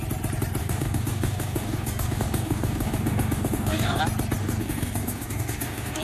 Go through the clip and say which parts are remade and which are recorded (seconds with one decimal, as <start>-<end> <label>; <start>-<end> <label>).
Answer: 0.0-0.6 recorded; 0.6-4.0 remade; 4.0-4.4 recorded; 4.4-6.0 remade